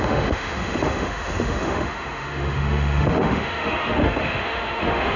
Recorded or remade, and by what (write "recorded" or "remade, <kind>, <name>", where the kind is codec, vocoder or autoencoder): remade, autoencoder, DAC-VAE